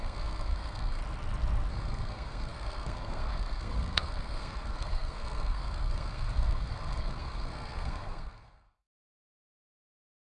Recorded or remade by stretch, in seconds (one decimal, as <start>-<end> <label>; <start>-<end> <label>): 0.0-1.0 remade; 1.0-1.7 recorded; 1.7-10.2 remade